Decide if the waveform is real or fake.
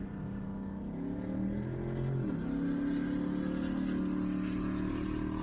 real